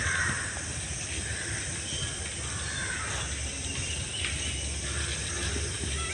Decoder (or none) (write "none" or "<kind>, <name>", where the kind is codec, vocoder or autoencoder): none